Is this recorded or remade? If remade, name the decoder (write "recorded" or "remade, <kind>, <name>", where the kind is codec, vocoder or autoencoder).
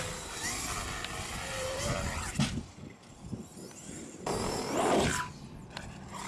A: recorded